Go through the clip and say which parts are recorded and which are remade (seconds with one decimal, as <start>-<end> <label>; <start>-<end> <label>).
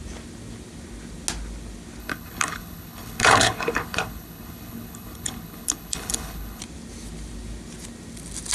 0.0-2.0 recorded; 2.0-6.6 remade; 6.6-8.5 recorded